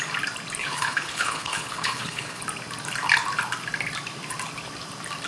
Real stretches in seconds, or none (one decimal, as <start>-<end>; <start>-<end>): 0.0-0.6; 2.4-5.3